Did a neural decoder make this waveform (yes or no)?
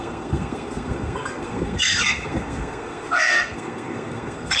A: yes